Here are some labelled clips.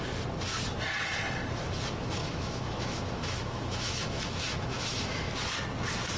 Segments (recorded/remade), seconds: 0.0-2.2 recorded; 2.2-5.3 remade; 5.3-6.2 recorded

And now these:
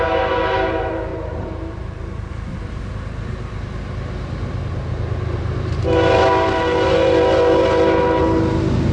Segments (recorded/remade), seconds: 0.0-1.1 recorded; 1.1-2.3 remade; 2.3-8.9 recorded